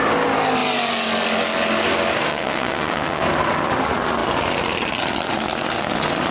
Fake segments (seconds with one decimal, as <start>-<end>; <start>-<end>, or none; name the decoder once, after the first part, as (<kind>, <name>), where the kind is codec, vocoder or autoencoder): 2.3-3.2 (vocoder, WaveNeXt)